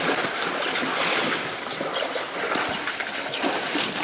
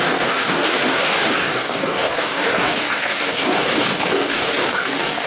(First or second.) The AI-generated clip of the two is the second